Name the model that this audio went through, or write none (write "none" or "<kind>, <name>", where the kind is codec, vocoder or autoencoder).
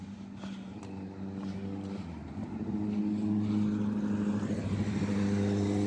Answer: none